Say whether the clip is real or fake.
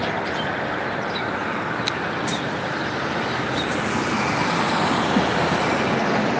real